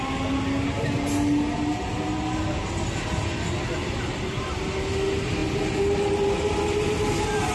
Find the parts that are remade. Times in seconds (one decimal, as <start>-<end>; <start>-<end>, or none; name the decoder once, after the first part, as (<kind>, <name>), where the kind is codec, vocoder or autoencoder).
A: none